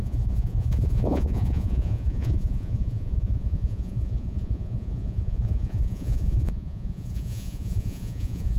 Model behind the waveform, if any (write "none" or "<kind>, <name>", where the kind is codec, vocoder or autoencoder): vocoder, Vocos